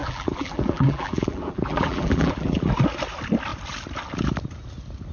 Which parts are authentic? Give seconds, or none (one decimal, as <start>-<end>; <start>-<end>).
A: 2.7-5.1